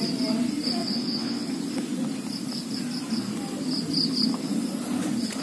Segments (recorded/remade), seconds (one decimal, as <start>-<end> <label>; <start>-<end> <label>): 0.0-0.8 recorded; 0.8-1.5 remade; 1.5-5.4 recorded